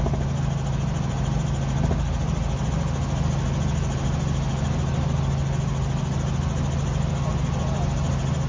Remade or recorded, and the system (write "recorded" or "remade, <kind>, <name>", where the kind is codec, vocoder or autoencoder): recorded